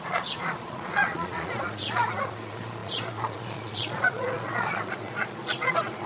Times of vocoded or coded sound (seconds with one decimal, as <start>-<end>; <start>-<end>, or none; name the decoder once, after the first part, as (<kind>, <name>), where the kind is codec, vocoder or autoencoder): 0.0-6.1 (vocoder, Vocos)